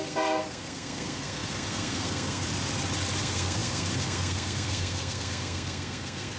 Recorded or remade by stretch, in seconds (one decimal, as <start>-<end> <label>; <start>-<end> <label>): 0.0-2.5 remade; 2.5-3.2 recorded; 3.2-6.4 remade